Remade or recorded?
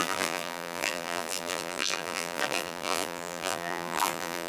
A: remade